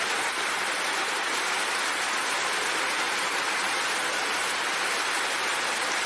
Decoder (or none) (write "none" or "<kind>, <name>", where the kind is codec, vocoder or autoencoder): none